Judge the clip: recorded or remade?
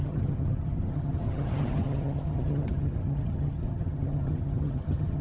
remade